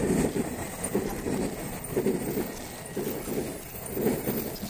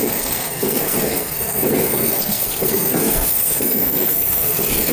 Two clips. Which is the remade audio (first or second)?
second